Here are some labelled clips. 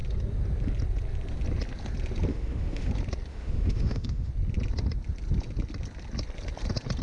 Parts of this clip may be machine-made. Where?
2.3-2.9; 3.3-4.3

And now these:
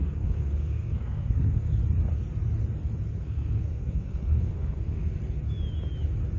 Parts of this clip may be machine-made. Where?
0.0-1.7; 3.2-5.0

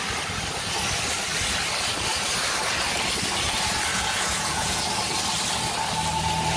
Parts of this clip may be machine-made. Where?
3.9-4.8

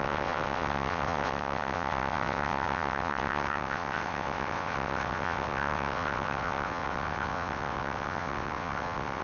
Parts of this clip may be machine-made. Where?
0.0-9.2

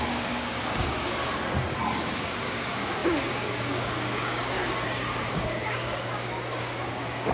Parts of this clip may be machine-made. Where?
0.0-1.2; 2.0-4.6; 5.3-7.3